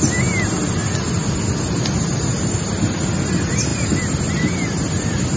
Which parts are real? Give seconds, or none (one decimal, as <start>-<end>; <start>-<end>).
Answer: 0.0-5.4